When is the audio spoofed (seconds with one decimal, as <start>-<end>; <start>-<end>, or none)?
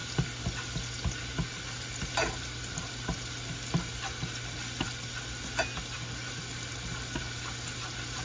none